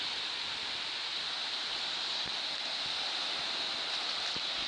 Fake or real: real